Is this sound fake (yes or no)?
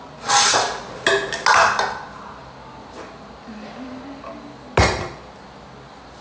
no